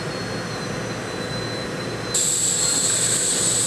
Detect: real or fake real